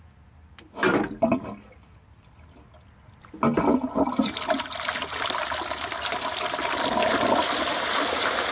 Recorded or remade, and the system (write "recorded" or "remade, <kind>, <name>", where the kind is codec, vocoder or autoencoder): recorded